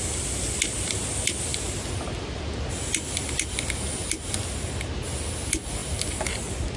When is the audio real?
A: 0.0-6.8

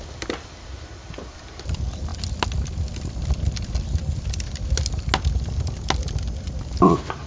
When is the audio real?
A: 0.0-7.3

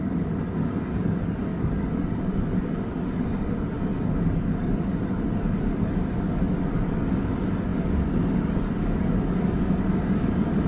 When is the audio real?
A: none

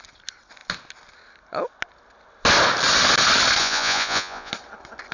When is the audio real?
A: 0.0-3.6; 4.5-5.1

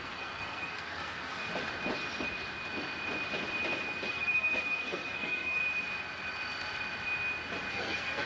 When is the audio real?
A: 1.5-4.1; 5.6-7.7

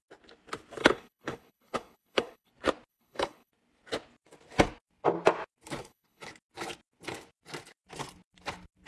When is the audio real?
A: 0.0-0.8; 2.5-2.9; 3.5-5.8; 6.3-8.9

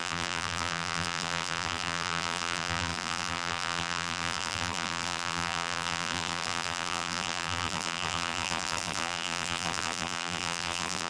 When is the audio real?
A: none